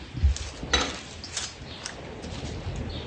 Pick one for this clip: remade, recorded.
recorded